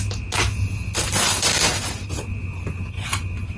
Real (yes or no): yes